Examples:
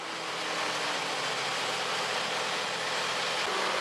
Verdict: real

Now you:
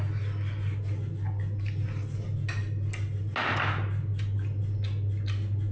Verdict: real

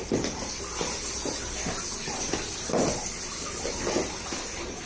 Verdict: real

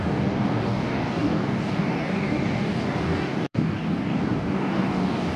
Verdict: fake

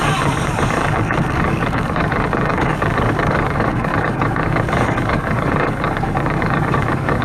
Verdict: fake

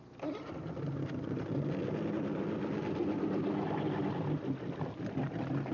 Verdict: real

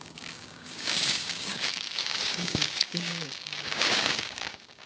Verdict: fake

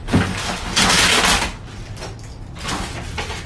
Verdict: real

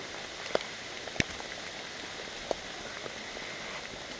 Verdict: real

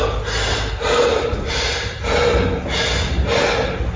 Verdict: real